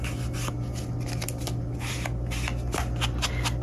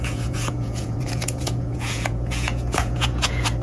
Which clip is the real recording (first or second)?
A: first